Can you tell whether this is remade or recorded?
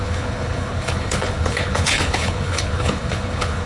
remade